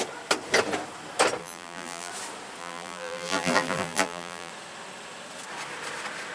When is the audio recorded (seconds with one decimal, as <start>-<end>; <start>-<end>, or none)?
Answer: 0.0-1.4; 2.1-2.6; 4.5-6.3